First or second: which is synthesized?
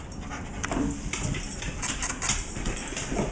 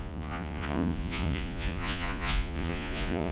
second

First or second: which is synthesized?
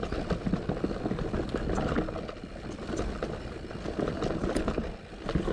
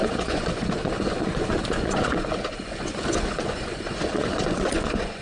second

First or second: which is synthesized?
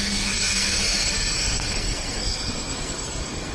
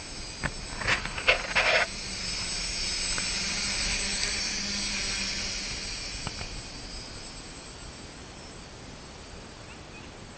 first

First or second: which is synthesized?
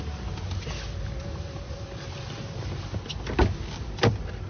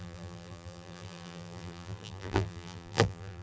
second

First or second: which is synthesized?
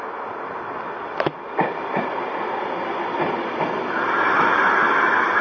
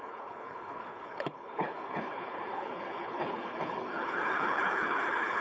second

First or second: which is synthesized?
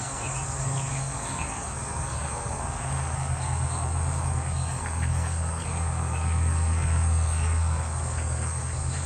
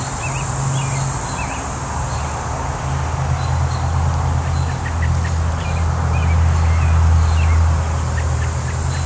first